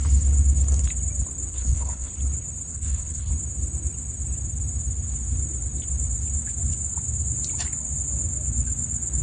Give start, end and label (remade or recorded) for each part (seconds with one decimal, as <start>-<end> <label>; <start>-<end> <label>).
0.0-1.5 recorded; 1.5-2.1 remade; 2.1-2.7 recorded; 2.7-3.3 remade; 3.3-9.2 recorded

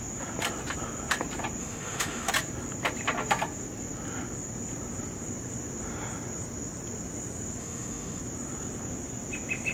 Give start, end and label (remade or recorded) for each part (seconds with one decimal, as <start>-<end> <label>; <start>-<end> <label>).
0.0-1.6 recorded; 1.6-2.3 remade; 2.3-7.6 recorded; 7.6-8.2 remade; 8.2-9.7 recorded

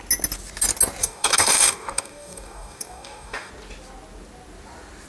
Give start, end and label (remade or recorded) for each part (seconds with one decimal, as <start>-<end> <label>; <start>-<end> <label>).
0.0-1.0 recorded; 1.0-3.5 remade; 3.5-5.1 recorded

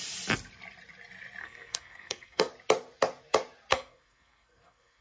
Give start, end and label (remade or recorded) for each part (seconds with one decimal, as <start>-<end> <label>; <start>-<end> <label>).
0.0-1.4 recorded; 1.4-2.5 remade; 2.5-3.7 recorded; 3.7-5.0 remade